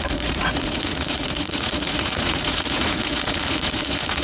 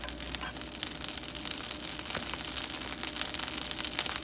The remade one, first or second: first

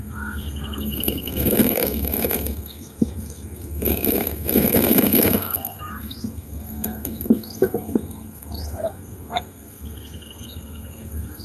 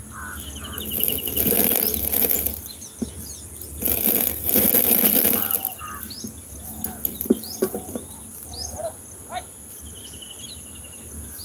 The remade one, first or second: first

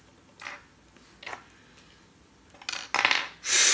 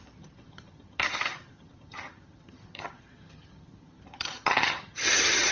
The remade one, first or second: second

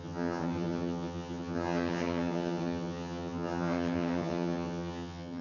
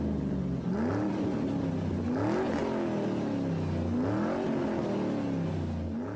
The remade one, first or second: first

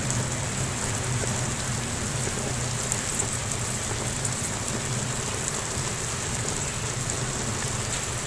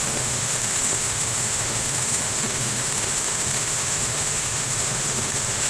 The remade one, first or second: second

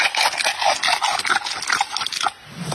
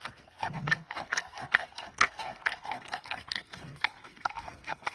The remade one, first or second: second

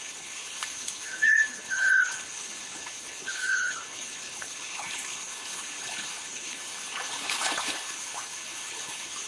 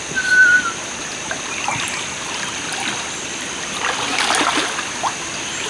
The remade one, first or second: first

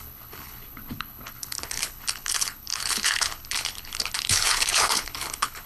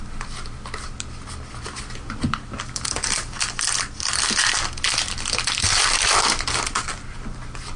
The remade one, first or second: first